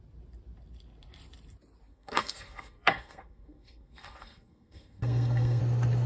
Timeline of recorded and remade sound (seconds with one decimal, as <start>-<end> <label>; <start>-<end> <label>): 0.0-1.9 recorded; 1.9-5.6 remade; 5.6-6.1 recorded